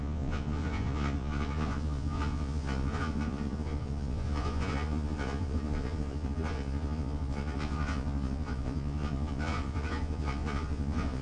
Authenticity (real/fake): fake